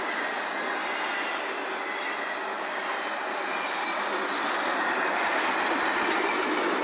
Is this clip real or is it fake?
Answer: real